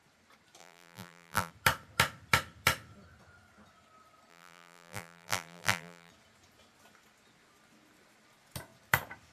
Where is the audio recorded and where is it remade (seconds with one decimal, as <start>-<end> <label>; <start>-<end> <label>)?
0.0-0.6 recorded; 0.6-1.5 remade; 1.5-4.3 recorded; 4.3-6.1 remade; 6.1-9.3 recorded